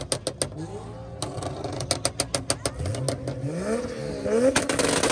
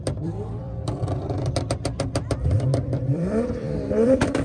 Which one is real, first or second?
first